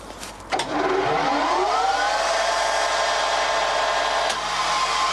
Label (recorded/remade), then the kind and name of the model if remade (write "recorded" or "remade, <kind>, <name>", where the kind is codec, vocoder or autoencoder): recorded